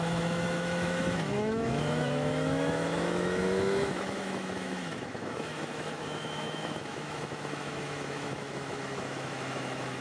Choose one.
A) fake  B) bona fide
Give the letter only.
A